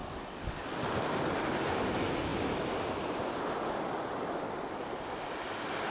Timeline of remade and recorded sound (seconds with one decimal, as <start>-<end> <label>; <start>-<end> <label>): 0.0-0.7 remade; 0.7-5.9 recorded